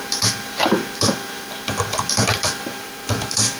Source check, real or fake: fake